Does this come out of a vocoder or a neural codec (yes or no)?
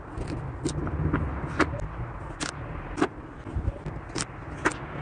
no